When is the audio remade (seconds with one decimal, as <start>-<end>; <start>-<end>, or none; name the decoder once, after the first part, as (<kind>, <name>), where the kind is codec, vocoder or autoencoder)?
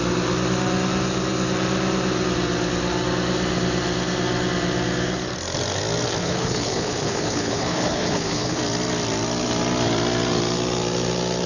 6.2-8.6 (codec, HILCodec)